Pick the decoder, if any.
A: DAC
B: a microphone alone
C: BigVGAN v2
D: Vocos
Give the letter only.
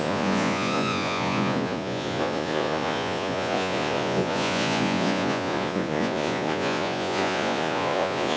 D